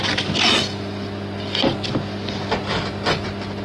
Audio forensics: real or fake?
real